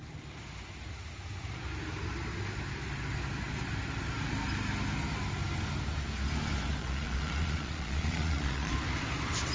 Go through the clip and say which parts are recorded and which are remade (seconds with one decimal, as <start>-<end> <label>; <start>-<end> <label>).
0.0-6.8 recorded; 6.8-8.7 remade; 8.7-9.5 recorded

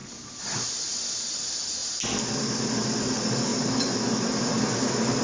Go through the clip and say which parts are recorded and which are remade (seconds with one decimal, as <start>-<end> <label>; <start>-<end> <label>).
0.0-1.4 remade; 1.4-3.5 recorded; 3.5-4.7 remade; 4.7-5.2 recorded

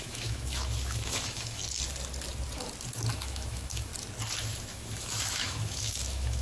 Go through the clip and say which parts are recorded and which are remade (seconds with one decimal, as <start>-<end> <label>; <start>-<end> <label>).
0.0-1.6 remade; 1.6-3.1 recorded; 3.1-3.9 remade; 3.9-4.4 recorded; 4.4-6.4 remade

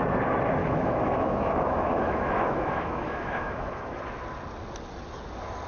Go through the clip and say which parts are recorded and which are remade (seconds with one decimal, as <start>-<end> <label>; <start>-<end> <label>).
0.0-0.6 recorded; 0.6-4.0 remade; 4.0-5.7 recorded

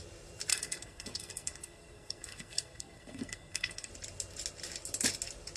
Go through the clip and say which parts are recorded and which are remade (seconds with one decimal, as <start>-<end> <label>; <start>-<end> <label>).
0.0-0.5 recorded; 0.5-3.9 remade; 3.9-5.6 recorded

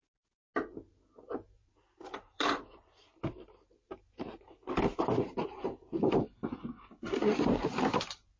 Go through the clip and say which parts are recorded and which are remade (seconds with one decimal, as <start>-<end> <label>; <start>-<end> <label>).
0.0-1.6 recorded; 1.6-6.1 remade; 6.1-8.4 recorded

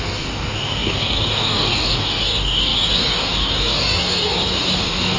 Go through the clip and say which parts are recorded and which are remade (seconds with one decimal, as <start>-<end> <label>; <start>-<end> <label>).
0.0-5.2 remade

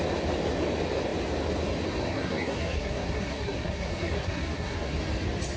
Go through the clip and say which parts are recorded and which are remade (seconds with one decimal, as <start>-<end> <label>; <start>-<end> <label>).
0.0-2.0 recorded; 2.0-5.0 remade; 5.0-5.6 recorded